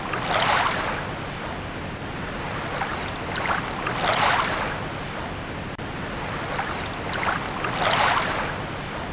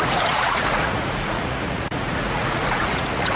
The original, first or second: first